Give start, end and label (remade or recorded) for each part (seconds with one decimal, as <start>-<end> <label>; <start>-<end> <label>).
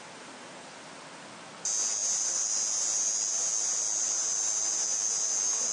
0.0-5.7 recorded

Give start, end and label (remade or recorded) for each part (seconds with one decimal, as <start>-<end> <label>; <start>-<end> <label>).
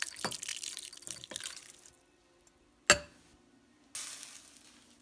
0.0-5.0 recorded